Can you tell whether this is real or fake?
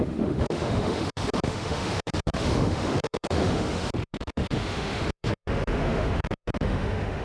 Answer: fake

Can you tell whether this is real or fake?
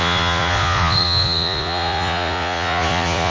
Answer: fake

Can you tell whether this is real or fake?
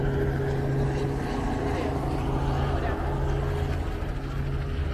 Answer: real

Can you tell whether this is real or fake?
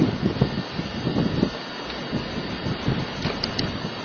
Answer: real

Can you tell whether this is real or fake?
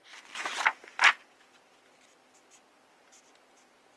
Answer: real